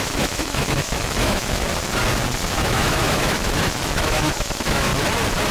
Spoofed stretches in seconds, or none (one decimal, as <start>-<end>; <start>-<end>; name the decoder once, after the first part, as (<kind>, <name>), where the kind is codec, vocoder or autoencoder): 0.0-1.7 (autoencoder, DAC-VAE); 2.5-4.9